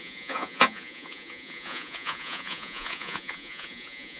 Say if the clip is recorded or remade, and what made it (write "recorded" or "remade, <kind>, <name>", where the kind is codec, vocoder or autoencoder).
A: remade, vocoder, Vocos